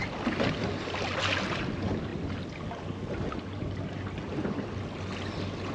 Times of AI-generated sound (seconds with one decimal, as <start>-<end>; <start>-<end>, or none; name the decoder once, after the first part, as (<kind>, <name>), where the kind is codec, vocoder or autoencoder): none